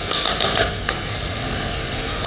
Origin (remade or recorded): remade